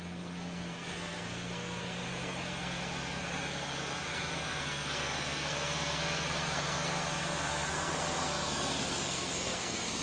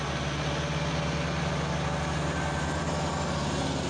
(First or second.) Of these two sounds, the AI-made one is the first